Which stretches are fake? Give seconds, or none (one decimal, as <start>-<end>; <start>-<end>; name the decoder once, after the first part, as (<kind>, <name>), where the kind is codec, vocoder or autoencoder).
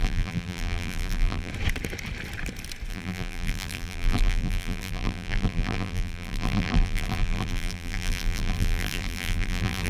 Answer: 0.0-1.5 (vocoder, BigVGAN v2); 2.9-9.9